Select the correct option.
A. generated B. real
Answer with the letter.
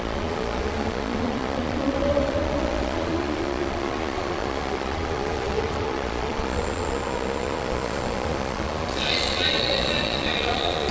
A